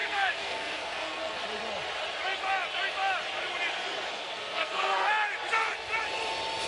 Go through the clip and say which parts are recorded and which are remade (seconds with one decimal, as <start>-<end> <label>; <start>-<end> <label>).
0.0-1.4 remade; 1.4-4.1 recorded; 4.1-5.1 remade; 5.1-6.7 recorded